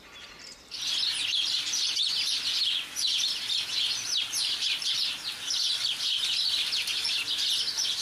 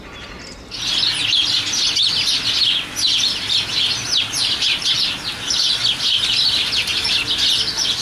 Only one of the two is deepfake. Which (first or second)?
first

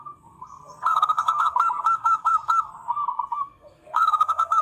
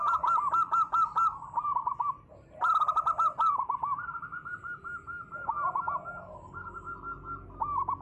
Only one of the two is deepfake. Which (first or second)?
first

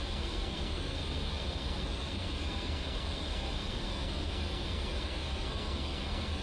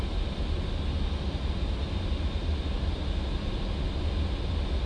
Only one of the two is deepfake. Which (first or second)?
first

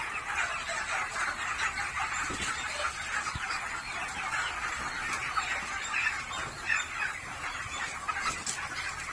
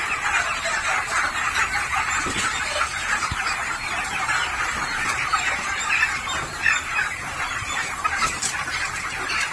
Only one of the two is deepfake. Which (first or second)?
second